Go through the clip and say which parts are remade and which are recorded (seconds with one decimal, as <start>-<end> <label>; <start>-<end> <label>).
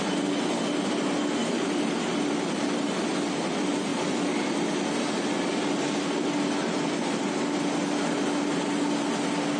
0.0-1.4 recorded; 1.4-2.0 remade; 2.0-9.6 recorded